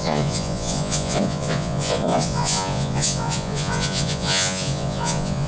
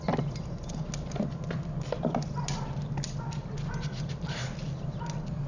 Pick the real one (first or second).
second